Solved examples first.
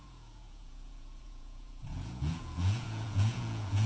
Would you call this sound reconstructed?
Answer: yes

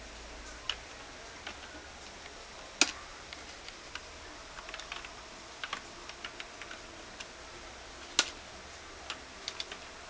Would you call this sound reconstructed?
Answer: no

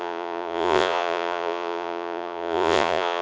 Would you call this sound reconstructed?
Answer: yes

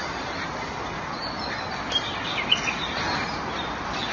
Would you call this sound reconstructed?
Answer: no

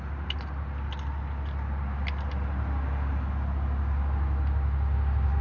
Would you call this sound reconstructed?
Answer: no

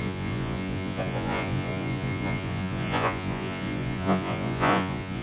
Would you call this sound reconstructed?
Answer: yes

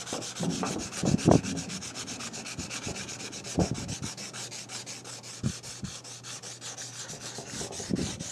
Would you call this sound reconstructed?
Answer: no